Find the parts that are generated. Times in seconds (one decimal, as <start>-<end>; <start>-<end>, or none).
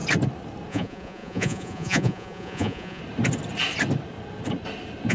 0.7-3.0